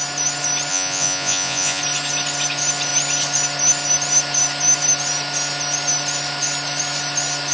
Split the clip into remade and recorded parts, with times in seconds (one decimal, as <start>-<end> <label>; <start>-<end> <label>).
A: 0.0-0.7 recorded; 0.7-1.8 remade; 1.8-7.5 recorded